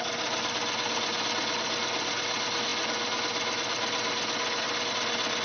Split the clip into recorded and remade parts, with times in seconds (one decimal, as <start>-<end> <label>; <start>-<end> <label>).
0.0-5.4 recorded